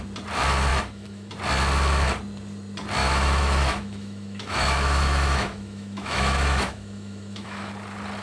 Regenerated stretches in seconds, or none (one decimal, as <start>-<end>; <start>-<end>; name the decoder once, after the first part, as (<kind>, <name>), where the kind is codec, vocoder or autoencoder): 0.7-1.3 (autoencoder, DAC-VAE); 3.0-7.7